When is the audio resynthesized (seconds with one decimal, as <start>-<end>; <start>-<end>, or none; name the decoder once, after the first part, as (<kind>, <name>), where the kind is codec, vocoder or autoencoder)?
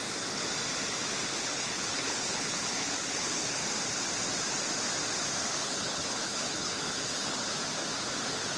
1.3-3.6 (codec, HILCodec); 5.5-7.5